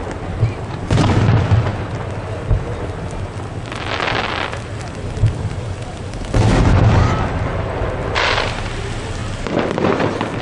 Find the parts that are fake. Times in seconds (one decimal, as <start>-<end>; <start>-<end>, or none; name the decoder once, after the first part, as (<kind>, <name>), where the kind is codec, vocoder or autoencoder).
none